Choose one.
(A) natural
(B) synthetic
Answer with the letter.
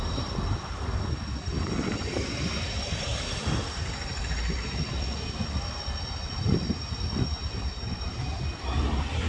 A